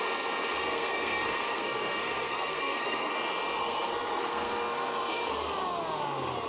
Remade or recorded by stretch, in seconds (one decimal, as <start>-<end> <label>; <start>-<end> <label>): 0.0-0.6 recorded; 0.6-3.1 remade; 3.1-3.6 recorded; 3.6-5.3 remade; 5.3-6.5 recorded